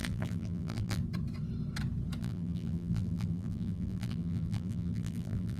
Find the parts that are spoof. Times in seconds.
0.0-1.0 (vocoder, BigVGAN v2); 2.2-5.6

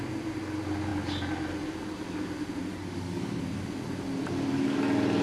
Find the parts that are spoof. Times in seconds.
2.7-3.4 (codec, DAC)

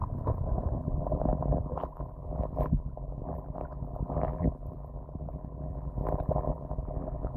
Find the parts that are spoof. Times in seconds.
0.8-7.4 (vocoder, BigVGAN v2)

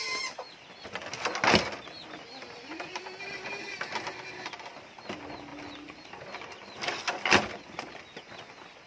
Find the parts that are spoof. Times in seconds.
5.5-8.0 (vocoder, BigVGAN v2)

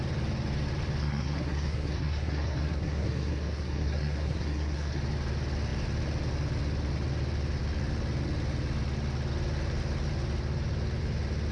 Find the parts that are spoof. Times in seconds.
1.0-5.0 (codec, SNAC)

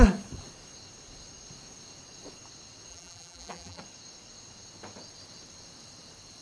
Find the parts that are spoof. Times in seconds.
2.9-3.8 (vocoder, BigVGAN v2)

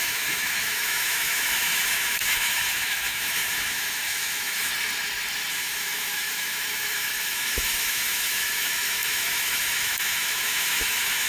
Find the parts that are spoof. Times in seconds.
0.0-4.7 (autoencoder, DAC-VAE); 5.5-11.3

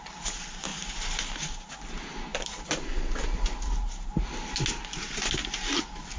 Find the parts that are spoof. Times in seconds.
0.7-1.7 (vocoder, BigVGAN v2)